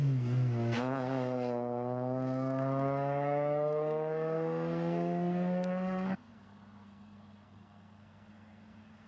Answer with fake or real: fake